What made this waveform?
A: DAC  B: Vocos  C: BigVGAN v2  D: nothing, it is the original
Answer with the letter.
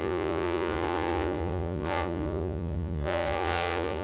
B